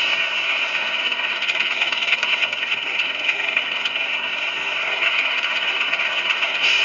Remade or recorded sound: remade